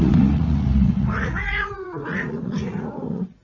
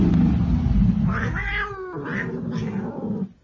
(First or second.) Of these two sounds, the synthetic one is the first